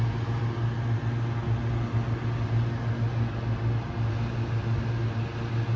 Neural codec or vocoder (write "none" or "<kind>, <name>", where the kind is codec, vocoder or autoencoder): none